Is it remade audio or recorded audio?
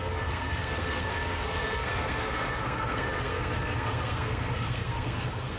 remade